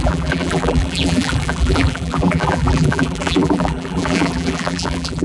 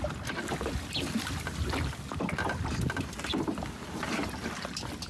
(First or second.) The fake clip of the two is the first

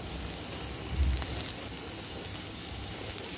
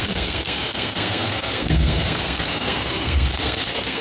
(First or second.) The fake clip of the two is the second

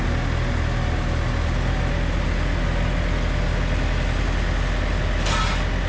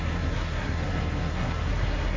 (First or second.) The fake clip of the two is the second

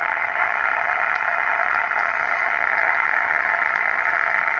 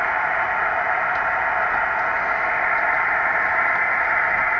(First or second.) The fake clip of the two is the first